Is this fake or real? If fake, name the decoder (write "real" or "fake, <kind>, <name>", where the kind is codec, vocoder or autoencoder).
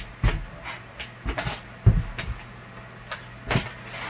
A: real